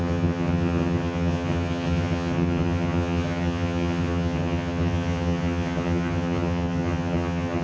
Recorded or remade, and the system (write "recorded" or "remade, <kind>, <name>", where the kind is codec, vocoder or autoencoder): remade, vocoder, HiFi-GAN